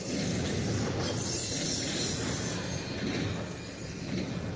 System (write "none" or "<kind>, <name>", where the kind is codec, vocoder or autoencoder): none